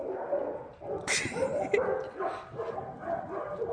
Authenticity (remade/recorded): remade